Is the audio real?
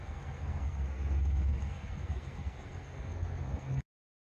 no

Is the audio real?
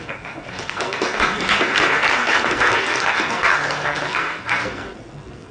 no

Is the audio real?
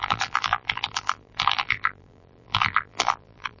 no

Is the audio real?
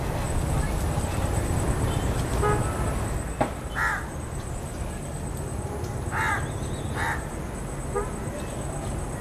yes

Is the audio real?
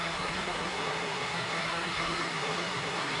no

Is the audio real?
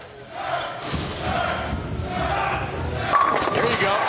yes